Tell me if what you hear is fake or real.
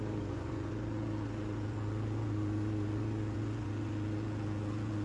fake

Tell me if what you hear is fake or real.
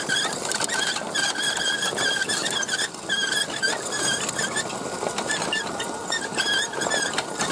real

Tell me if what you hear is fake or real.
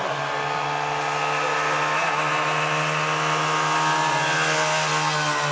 real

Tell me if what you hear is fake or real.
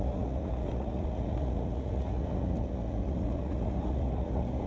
fake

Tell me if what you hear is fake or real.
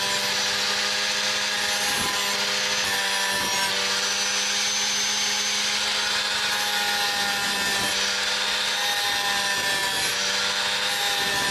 real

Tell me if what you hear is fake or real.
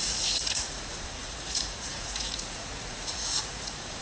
fake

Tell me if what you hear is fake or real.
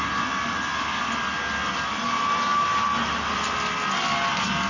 real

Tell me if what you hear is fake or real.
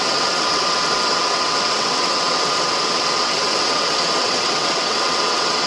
fake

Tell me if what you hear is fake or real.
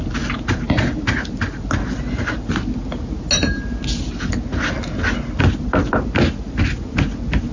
real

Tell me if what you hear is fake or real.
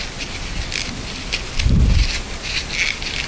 real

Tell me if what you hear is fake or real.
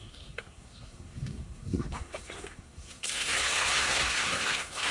fake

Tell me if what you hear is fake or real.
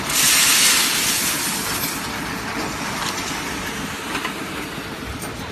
real